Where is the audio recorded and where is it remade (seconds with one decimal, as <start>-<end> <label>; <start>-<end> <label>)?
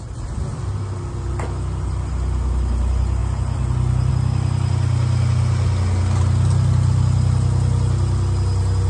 0.0-8.9 recorded